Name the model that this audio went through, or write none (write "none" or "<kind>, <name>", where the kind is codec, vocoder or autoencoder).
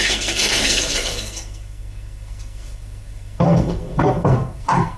codec, SNAC